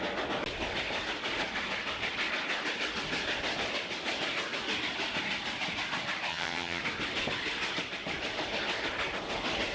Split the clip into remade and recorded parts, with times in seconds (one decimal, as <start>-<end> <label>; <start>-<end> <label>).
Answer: 0.0-6.3 recorded; 6.3-6.8 remade; 6.8-9.7 recorded